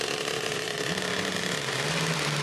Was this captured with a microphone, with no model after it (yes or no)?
no